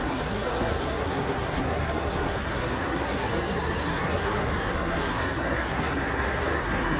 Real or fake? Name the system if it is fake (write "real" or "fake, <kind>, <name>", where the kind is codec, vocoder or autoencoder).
fake, codec, SNAC